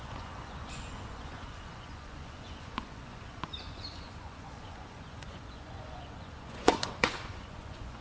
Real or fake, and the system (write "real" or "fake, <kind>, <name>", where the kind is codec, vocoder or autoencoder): fake, vocoder, Vocos